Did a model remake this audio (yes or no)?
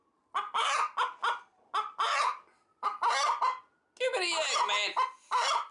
no